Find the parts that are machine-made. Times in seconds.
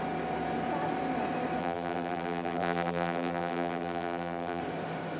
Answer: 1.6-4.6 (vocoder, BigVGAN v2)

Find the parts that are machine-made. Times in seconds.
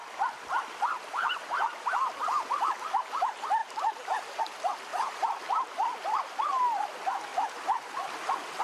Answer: 1.2-2.0 (vocoder, BigVGAN v2); 4.9-5.4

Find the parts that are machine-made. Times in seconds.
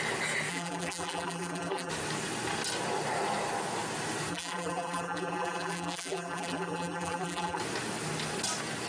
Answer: 0.5-1.9 (vocoder, BigVGAN v2); 4.3-7.6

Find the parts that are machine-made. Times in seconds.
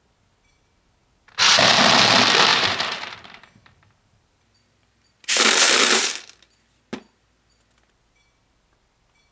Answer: 2.5-6.1 (vocoder, BigVGAN v2)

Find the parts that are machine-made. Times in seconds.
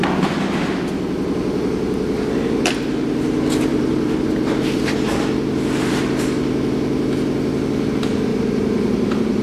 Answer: 3.7-4.8 (vocoder, BigVGAN v2); 8.3-9.4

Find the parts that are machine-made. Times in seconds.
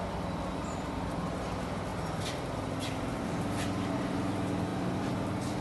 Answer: none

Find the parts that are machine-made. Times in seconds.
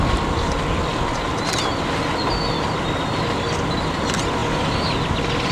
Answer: 0.0-0.9 (vocoder, BigVGAN v2); 3.8-4.4